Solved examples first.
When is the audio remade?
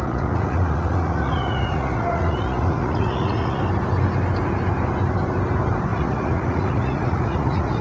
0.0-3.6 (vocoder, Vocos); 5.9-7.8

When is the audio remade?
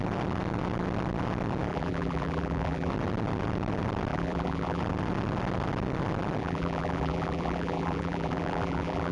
1.7-2.9 (vocoder, BigVGAN v2); 4.1-4.8; 6.4-9.1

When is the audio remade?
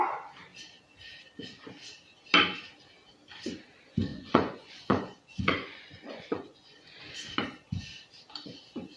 4.1-7.0 (vocoder, Vocos)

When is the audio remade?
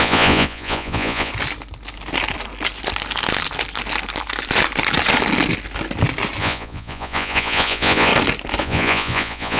0.0-1.3 (vocoder, Vocos); 6.4-8.1; 8.6-9.6